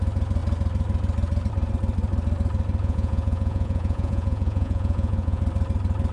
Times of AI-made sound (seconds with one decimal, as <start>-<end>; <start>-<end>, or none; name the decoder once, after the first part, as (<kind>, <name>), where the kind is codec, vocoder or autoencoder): 2.8-5.4 (vocoder, Vocos)